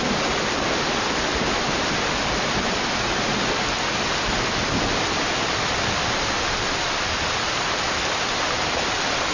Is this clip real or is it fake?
real